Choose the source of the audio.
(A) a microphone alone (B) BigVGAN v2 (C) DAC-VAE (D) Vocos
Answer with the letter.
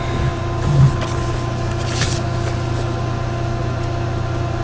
A